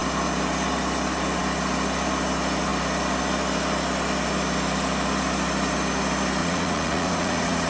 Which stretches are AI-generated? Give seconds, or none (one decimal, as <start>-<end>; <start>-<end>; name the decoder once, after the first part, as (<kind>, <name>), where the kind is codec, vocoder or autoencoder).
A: 6.4-7.7 (vocoder, Vocos)